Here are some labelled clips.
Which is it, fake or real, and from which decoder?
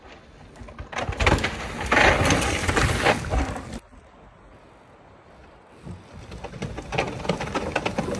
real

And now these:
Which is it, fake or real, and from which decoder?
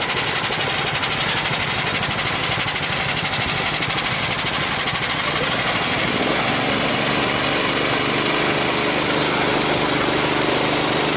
real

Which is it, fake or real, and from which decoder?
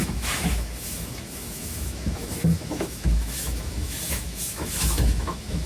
fake, autoencoder, DAC-VAE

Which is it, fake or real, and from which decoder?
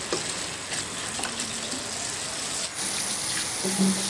real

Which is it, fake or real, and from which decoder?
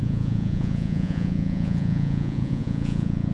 fake, vocoder, Vocos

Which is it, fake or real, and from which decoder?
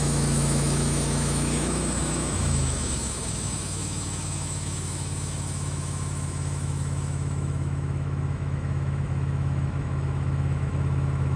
fake, autoencoder, DAC-VAE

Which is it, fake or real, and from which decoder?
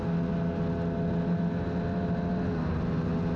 real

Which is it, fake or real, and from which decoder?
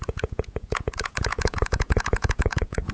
fake, vocoder, Vocos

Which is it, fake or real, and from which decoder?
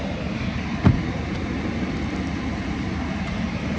real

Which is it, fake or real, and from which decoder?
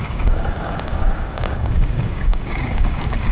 fake, codec, DAC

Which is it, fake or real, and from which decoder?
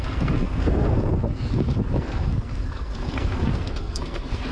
fake, codec, SNAC